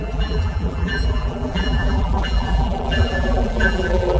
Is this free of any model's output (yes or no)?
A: no